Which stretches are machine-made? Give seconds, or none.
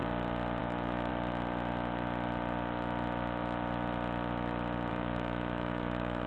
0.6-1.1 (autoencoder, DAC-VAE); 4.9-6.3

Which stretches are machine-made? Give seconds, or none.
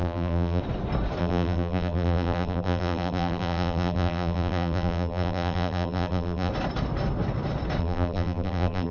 0.0-0.6 (vocoder, BigVGAN v2); 1.2-6.5; 7.8-8.9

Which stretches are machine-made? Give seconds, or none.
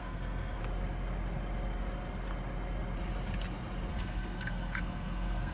0.0-0.6 (codec, SNAC); 3.9-5.5